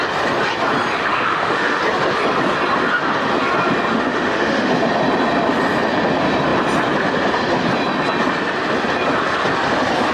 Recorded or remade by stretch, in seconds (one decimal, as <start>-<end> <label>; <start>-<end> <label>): 0.0-1.0 recorded; 1.0-1.8 remade; 1.8-3.9 recorded; 3.9-4.7 remade; 4.7-10.1 recorded